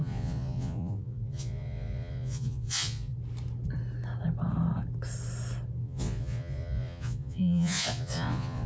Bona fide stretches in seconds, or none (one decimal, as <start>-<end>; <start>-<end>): 3.1-5.8